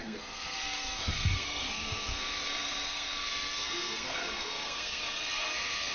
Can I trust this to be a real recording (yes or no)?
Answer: no